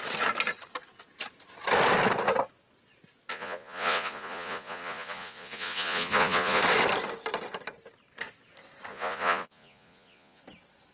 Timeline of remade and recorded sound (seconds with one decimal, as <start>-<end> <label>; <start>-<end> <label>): 0.0-3.3 recorded; 3.3-6.6 remade; 6.6-8.9 recorded; 8.9-10.4 remade; 10.4-10.9 recorded